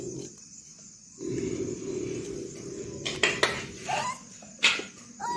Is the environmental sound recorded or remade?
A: recorded